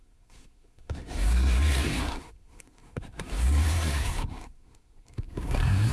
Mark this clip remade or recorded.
remade